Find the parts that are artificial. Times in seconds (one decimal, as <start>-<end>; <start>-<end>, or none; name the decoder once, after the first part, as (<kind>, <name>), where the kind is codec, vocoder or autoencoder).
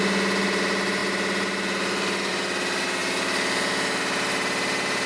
none